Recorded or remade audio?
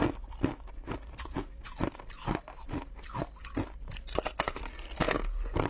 recorded